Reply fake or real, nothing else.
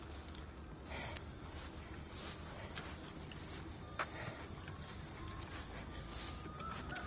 real